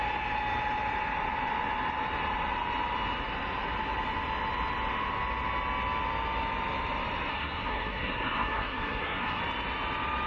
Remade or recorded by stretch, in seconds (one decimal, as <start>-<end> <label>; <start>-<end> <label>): 0.0-7.3 recorded; 7.3-9.4 remade; 9.4-10.3 recorded